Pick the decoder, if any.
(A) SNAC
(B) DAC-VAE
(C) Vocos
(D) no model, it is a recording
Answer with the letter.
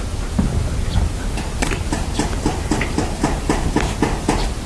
D